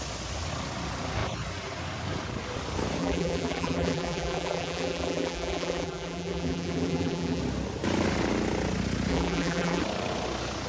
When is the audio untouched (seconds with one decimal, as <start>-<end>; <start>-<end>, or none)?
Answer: 0.0-3.0; 7.4-9.1; 9.8-10.7